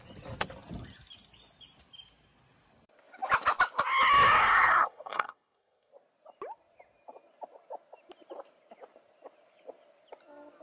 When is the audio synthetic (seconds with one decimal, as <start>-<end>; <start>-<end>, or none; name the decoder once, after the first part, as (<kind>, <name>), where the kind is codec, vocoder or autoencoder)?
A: 4.4-5.9 (codec, SNAC)